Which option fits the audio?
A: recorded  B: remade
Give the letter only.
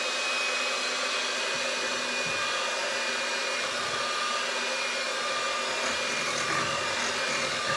A